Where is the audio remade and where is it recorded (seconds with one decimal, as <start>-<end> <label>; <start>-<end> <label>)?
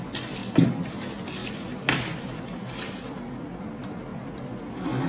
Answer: 0.0-0.4 recorded; 0.4-0.9 remade; 0.9-1.4 recorded; 1.4-3.6 remade; 3.6-4.1 recorded; 4.1-4.6 remade; 4.6-5.1 recorded